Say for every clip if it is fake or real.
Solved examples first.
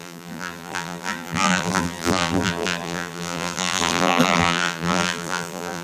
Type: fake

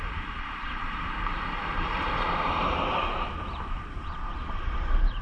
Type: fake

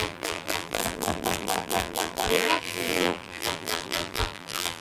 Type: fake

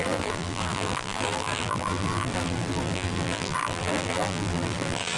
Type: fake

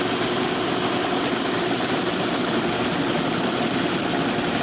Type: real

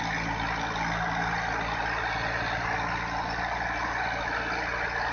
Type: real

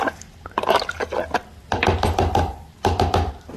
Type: real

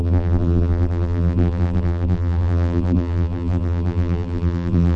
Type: fake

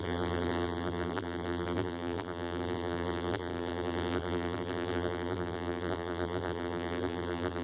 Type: fake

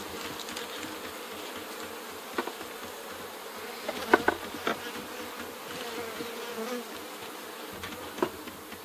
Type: real